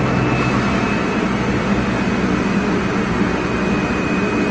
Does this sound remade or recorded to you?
recorded